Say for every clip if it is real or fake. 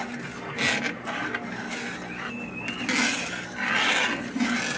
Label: real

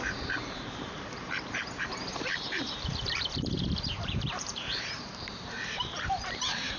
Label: fake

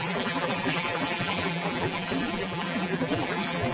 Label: fake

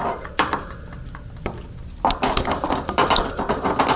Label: real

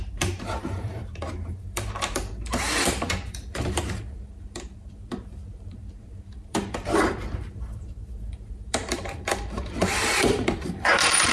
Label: fake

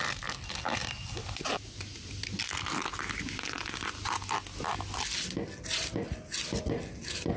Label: real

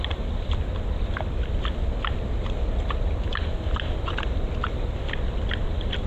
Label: real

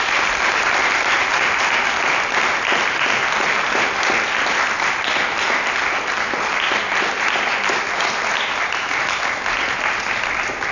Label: real